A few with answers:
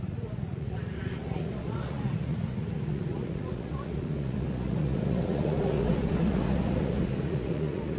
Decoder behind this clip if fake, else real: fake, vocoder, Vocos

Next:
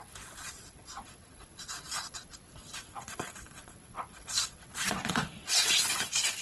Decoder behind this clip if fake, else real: fake, vocoder, Vocos